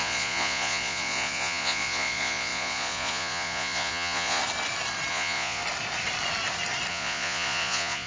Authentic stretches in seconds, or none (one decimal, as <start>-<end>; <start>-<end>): 4.4-5.1; 5.6-6.9

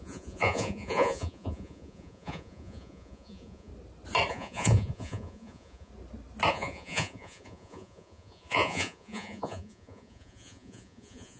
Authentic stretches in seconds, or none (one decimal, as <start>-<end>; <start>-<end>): 3.7-4.3; 5.9-6.5